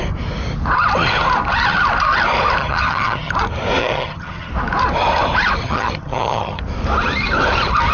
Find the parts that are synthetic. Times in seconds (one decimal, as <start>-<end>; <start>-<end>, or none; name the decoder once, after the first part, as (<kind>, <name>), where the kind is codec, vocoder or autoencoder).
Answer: 2.6-3.3 (vocoder, HiFi-GAN); 3.8-4.5; 5.6-6.6